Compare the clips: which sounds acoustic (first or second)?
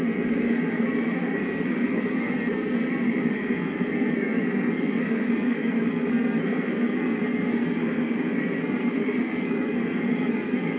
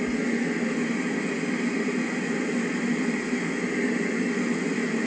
second